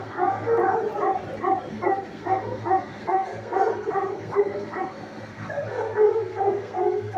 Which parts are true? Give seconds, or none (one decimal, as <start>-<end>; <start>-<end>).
0.6-1.7